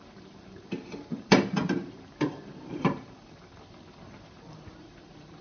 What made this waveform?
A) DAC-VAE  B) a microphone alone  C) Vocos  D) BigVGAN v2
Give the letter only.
D